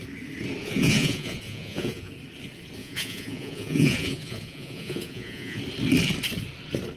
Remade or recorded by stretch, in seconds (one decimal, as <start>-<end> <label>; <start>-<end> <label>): 0.0-0.6 recorded; 0.6-2.1 remade; 2.1-2.8 recorded; 2.8-5.6 remade; 5.6-7.0 recorded